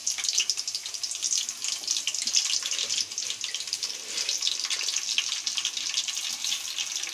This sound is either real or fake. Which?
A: real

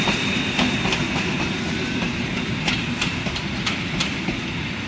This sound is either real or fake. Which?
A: real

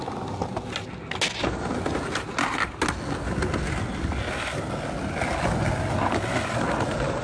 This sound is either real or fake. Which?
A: real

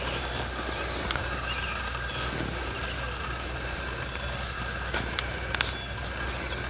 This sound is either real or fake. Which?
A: real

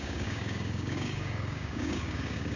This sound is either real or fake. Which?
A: fake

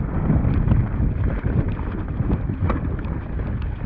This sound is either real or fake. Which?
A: real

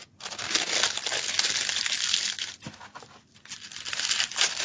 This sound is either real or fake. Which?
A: real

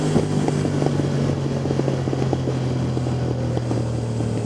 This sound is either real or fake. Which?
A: real